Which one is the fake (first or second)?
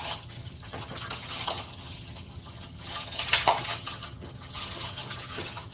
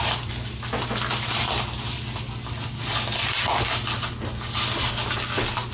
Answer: first